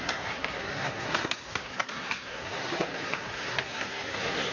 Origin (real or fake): fake